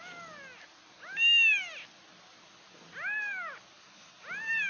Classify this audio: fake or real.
real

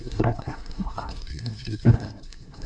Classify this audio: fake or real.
fake